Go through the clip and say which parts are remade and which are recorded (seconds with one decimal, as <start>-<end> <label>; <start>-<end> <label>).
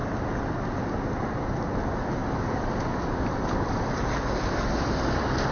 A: 0.0-2.2 recorded; 2.2-4.8 remade; 4.8-5.5 recorded